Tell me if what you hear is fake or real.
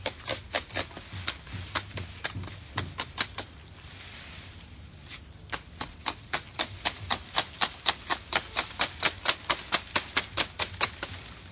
real